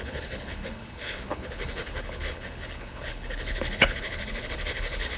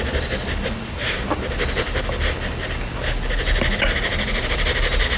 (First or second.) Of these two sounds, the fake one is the first